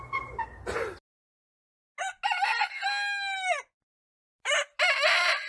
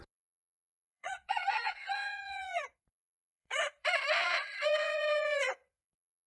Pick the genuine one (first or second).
first